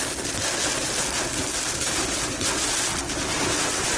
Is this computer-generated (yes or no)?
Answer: no